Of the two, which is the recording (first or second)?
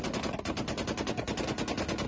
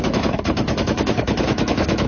first